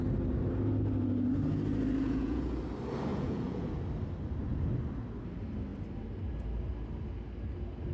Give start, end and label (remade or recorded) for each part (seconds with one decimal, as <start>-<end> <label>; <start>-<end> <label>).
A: 0.0-2.0 recorded; 2.0-2.6 remade; 2.6-3.1 recorded; 3.1-3.7 remade; 3.7-7.9 recorded

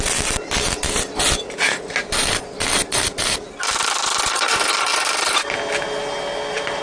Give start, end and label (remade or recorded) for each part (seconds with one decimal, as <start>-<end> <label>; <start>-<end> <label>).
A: 0.0-6.8 recorded

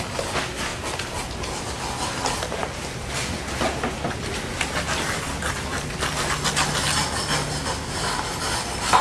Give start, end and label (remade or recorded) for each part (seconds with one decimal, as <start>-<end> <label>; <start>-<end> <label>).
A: 0.0-9.0 recorded

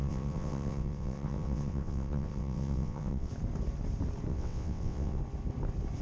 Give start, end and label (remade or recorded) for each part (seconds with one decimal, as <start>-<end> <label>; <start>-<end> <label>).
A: 0.0-3.3 remade; 3.3-4.3 recorded; 4.3-5.2 remade; 5.2-6.0 recorded

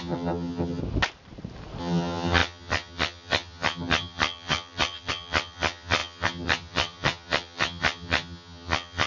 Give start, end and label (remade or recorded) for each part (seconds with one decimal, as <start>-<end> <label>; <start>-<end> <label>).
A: 0.0-0.8 remade; 0.8-1.8 recorded; 1.8-9.1 remade

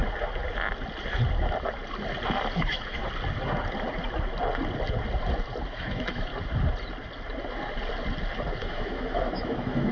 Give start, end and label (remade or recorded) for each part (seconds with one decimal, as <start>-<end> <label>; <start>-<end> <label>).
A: 0.0-2.6 recorded; 2.6-3.0 remade; 3.0-5.7 recorded; 5.7-6.3 remade; 6.3-8.6 recorded; 8.6-9.9 remade

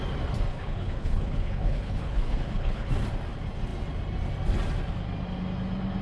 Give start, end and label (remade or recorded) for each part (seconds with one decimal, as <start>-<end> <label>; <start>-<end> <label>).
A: 0.0-0.5 recorded; 0.5-2.9 remade; 2.9-6.0 recorded